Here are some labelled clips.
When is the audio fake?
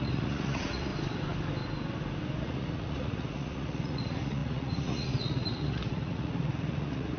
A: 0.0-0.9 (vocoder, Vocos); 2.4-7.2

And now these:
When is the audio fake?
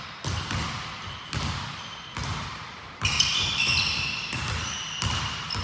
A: 2.2-3.4 (vocoder, BigVGAN v2)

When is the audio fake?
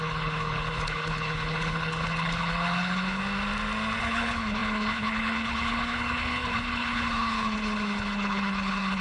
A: 0.0-3.2 (codec, HILCodec); 4.0-9.0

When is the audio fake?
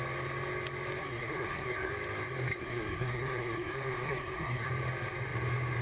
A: 1.0-1.9 (codec, SNAC); 2.5-4.7